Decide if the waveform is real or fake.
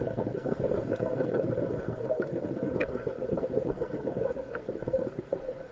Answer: fake